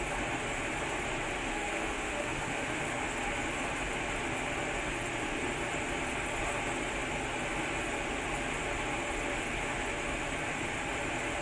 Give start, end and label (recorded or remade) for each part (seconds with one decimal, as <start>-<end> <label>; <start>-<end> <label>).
0.0-1.5 recorded; 1.5-2.8 remade; 2.8-11.4 recorded